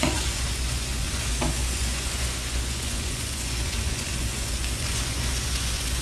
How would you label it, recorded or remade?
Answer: remade